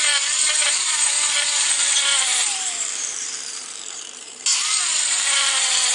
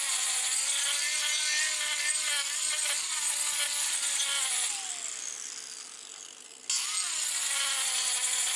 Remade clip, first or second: first